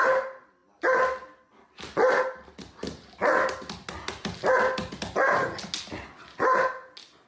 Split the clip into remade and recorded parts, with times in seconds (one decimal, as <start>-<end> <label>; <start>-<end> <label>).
0.0-7.3 recorded

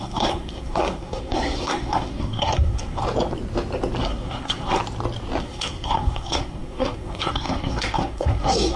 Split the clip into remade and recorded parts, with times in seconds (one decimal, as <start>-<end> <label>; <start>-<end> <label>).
0.0-3.0 remade; 3.0-4.0 recorded; 4.0-4.8 remade; 4.8-5.4 recorded; 5.4-8.8 remade

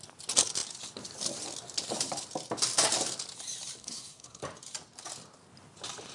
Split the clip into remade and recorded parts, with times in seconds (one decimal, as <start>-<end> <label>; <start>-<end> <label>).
0.0-3.8 recorded; 3.8-4.4 remade; 4.4-6.1 recorded

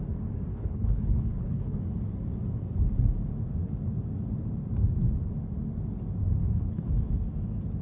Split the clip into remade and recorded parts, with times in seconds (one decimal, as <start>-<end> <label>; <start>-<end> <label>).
0.0-0.5 recorded; 0.5-1.8 remade; 1.8-6.4 recorded; 6.4-7.1 remade; 7.1-7.8 recorded

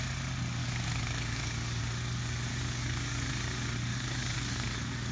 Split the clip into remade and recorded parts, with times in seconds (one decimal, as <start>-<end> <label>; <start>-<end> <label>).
0.0-0.6 recorded; 0.6-1.8 remade; 1.8-2.5 recorded; 2.5-3.3 remade; 3.3-3.9 recorded; 3.9-5.1 remade

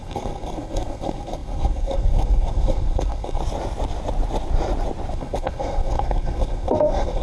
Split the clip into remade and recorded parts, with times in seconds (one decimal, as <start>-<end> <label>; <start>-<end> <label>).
0.0-3.4 remade; 3.4-5.1 recorded; 5.1-7.2 remade